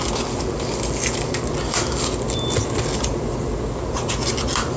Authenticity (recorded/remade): recorded